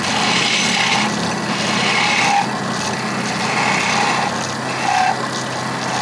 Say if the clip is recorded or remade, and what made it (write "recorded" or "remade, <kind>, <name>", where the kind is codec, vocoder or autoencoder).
recorded